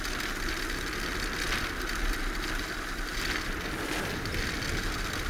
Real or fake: real